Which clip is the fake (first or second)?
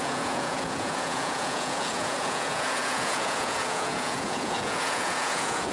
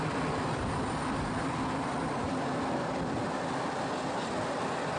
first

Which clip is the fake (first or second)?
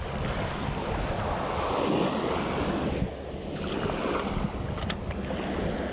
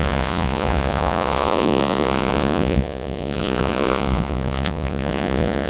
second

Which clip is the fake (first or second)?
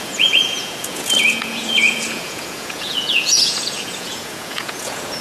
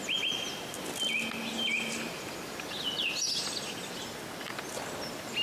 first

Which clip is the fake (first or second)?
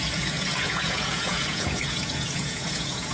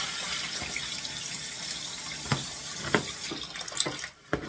first